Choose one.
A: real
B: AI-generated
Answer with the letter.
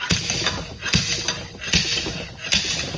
A